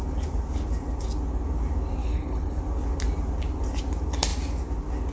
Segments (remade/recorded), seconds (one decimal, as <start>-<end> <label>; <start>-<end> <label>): 0.0-2.0 recorded; 2.0-2.6 remade; 2.6-5.1 recorded